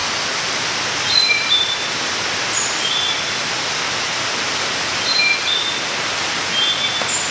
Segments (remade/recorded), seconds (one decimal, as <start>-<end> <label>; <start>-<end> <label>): 0.0-7.3 recorded